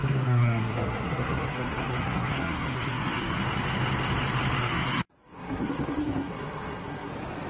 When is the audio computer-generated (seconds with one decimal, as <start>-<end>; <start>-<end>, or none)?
0.0-3.4; 4.6-7.1